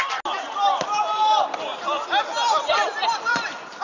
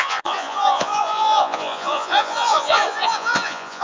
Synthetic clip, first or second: second